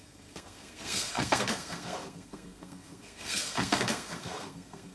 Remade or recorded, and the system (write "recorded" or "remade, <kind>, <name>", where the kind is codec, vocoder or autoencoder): remade, codec, SNAC